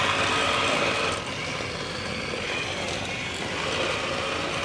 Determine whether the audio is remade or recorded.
recorded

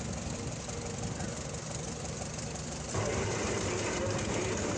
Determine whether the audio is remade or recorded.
recorded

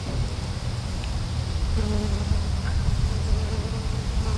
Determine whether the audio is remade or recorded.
recorded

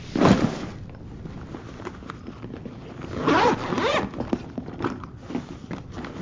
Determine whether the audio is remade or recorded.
recorded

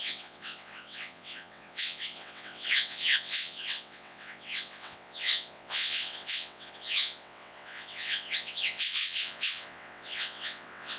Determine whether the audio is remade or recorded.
remade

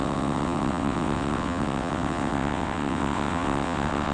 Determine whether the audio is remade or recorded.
remade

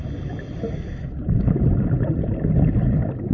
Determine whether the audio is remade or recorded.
recorded